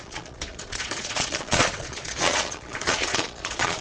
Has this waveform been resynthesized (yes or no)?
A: yes